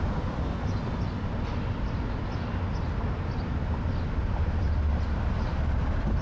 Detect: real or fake real